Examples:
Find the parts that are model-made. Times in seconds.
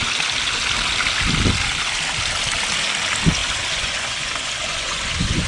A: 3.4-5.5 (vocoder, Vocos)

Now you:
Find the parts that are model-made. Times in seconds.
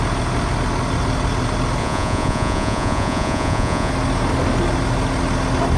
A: 1.8-3.9 (vocoder, Vocos)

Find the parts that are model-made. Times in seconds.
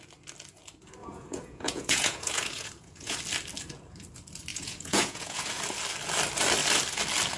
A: 1.0-3.2 (vocoder, Vocos); 4.5-5.6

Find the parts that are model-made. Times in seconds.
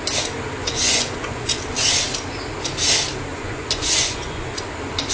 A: 0.6-1.6 (vocoder, Vocos); 3.3-4.6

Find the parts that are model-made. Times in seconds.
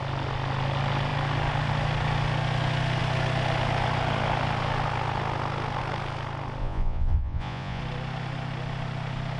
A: 6.6-7.8 (vocoder, Vocos)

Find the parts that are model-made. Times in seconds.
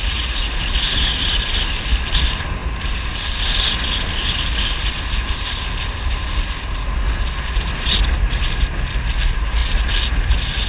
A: 0.0-0.5 (vocoder, Vocos)